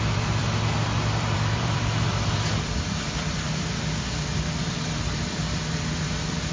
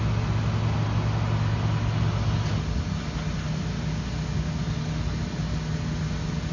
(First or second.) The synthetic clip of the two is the first